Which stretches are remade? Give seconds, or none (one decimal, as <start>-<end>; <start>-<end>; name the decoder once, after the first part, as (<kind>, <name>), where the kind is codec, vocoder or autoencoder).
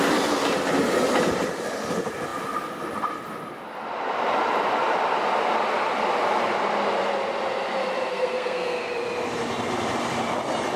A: 8.1-8.9 (codec, SNAC)